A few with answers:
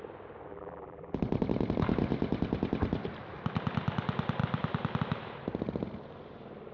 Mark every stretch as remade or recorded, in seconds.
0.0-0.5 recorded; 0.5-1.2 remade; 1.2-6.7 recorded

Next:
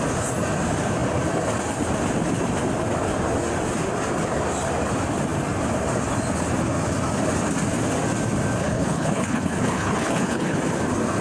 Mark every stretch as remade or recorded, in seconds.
0.0-8.6 recorded; 8.6-10.6 remade; 10.6-11.2 recorded

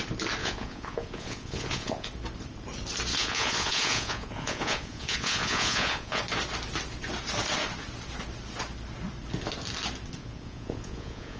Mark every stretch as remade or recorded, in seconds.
0.0-0.4 recorded; 0.4-2.1 remade; 2.1-3.1 recorded; 3.1-6.2 remade; 6.2-10.2 recorded; 10.2-11.4 remade

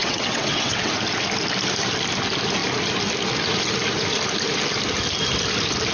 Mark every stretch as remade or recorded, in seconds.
0.0-0.9 remade; 0.9-5.9 recorded